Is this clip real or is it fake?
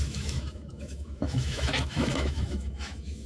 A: fake